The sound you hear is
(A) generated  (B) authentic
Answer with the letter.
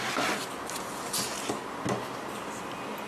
B